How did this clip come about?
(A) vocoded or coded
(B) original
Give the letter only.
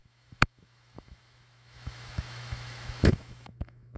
A